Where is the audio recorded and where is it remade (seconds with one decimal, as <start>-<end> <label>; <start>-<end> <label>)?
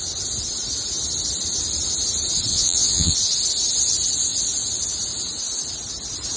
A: 0.0-2.5 recorded; 2.5-3.1 remade; 3.1-6.4 recorded